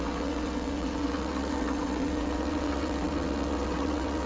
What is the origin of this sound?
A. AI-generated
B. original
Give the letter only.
A